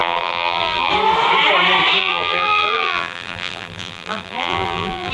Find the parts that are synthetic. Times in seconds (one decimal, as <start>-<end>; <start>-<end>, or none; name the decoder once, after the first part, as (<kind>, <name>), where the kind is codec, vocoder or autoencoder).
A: 0.0-0.9 (vocoder, BigVGAN v2); 2.0-5.1